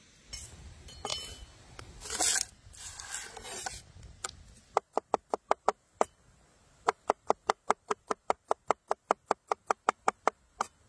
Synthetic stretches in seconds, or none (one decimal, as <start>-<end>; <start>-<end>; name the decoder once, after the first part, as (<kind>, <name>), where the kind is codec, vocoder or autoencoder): none